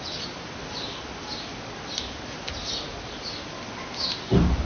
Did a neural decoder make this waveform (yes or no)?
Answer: no